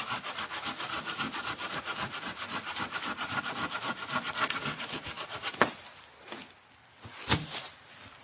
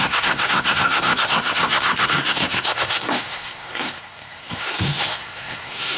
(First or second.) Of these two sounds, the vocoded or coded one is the second